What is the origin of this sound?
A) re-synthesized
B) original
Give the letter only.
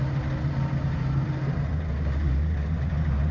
B